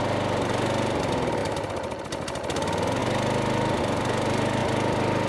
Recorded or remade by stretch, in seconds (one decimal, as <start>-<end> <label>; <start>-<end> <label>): 0.0-1.4 recorded; 1.4-2.0 remade; 2.0-5.3 recorded

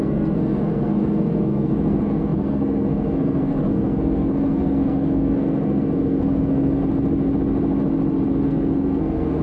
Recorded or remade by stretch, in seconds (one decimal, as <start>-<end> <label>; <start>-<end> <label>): 0.0-6.8 remade; 6.8-8.3 recorded; 8.3-9.4 remade

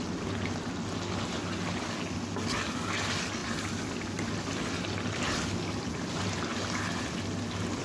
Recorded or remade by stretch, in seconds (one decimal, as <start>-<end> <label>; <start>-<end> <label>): 0.0-7.8 recorded

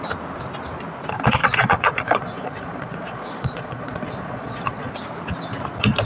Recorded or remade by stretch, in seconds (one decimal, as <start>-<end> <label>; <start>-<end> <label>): 0.0-1.4 recorded; 1.4-4.9 remade; 4.9-6.1 recorded

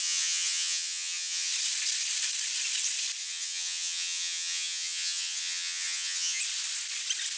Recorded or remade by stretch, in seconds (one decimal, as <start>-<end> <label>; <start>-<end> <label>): 0.0-1.5 remade; 1.5-3.2 recorded; 3.2-6.4 remade; 6.4-7.4 recorded

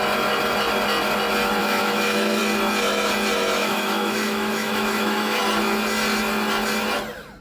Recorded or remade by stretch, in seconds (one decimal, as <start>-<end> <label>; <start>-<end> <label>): 0.0-1.6 recorded; 1.6-2.4 remade; 2.4-3.6 recorded; 3.6-5.4 remade; 5.4-7.4 recorded

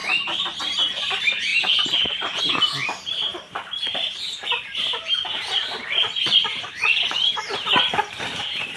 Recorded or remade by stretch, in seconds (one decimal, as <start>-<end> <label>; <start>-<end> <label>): 0.0-8.8 remade